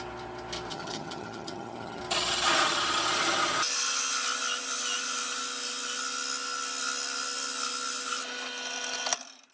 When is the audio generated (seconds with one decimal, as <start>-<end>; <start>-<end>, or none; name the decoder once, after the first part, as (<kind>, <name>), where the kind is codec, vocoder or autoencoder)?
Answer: 0.7-2.0 (vocoder, HiFi-GAN)